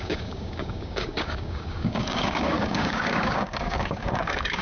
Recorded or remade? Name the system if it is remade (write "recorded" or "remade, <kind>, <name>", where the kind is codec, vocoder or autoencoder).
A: remade, codec, DAC